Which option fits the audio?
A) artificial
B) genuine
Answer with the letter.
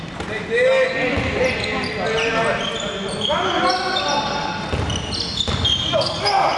B